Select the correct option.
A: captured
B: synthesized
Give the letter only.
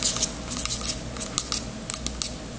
A